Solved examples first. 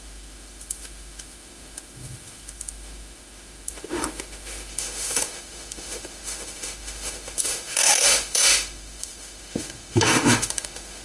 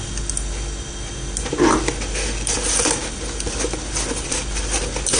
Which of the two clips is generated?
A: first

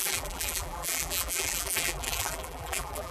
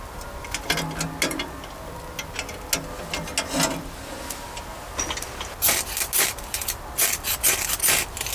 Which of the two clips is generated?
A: first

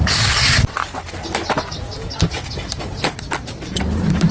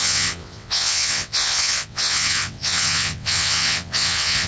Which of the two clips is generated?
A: second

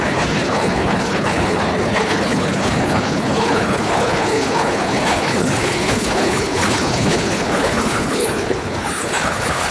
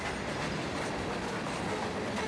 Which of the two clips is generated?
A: first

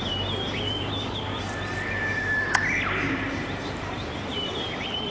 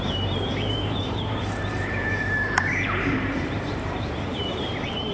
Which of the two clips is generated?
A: second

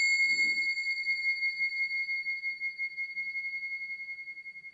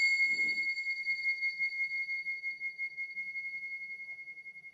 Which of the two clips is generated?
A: second